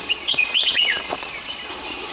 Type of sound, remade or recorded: remade